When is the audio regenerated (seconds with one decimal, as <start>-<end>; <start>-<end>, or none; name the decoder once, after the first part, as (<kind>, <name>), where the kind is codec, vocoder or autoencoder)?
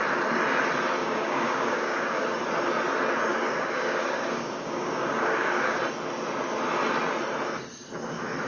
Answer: 1.0-2.4 (codec, DAC); 3.3-5.8